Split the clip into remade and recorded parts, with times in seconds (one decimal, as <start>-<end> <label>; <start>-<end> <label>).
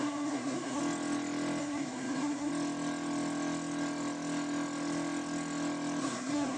0.0-0.8 remade; 0.8-1.6 recorded; 1.6-2.5 remade; 2.5-6.0 recorded; 6.0-6.6 remade